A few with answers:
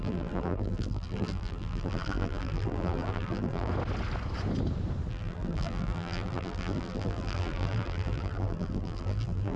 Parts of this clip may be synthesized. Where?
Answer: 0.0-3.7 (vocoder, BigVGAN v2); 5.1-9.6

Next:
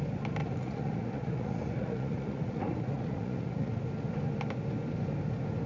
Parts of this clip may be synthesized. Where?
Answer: 0.4-3.8 (vocoder, Vocos)

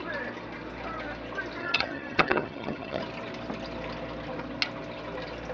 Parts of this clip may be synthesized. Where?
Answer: 1.6-3.0 (vocoder, HiFi-GAN)

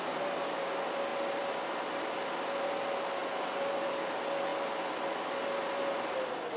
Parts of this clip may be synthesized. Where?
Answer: none

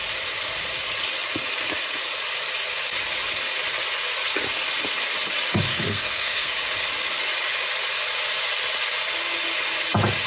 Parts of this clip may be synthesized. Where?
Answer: 5.7-6.5 (codec, SNAC)

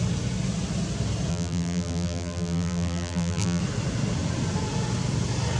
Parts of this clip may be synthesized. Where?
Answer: 1.3-3.6 (vocoder, BigVGAN v2)

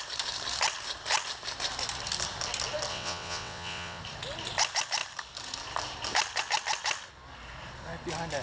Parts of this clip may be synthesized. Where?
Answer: 2.9-4.0 (vocoder, WaveNeXt)

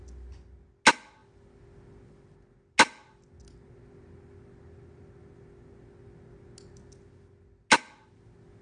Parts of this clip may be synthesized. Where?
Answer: none